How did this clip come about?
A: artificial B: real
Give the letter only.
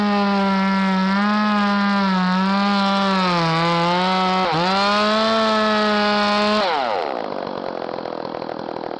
B